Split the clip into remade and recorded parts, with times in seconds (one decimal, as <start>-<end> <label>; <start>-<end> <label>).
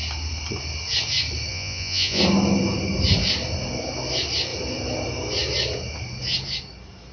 0.0-1.5 recorded; 1.5-2.2 remade; 2.2-7.1 recorded